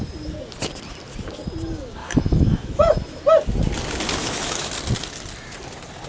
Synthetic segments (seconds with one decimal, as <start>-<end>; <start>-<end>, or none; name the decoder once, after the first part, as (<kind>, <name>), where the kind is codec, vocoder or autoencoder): 2.0-3.2 (autoencoder, DAC-VAE); 4.2-4.7